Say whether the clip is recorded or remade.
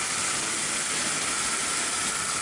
remade